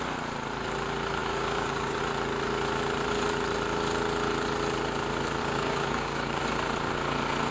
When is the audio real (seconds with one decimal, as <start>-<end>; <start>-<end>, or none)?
0.0-1.2; 2.0-5.4; 6.4-7.5